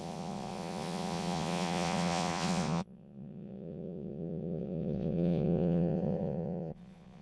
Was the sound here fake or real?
fake